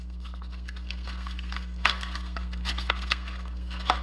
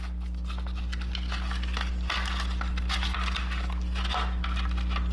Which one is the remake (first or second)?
first